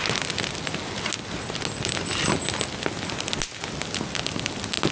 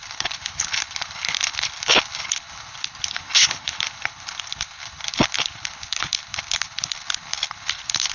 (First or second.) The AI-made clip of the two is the second